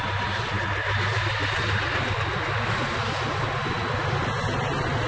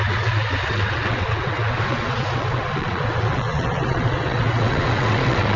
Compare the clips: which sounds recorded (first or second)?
first